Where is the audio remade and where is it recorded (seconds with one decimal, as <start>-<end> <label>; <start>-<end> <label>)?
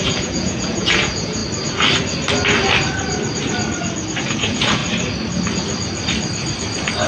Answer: 0.0-1.4 remade; 1.4-4.2 recorded; 4.2-4.8 remade; 4.8-7.1 recorded